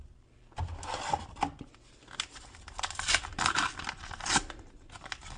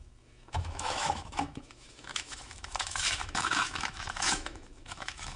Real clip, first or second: first